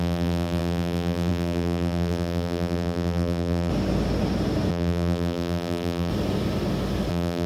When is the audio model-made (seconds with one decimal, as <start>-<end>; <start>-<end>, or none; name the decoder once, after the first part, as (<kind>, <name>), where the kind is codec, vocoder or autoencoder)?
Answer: 0.0-3.7 (vocoder, BigVGAN v2); 4.7-6.1; 7.1-7.5